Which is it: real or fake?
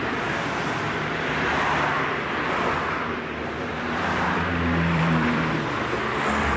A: fake